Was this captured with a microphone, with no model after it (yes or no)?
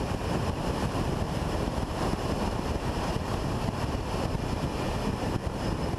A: no